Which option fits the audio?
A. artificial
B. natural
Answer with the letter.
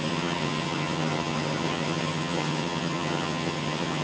A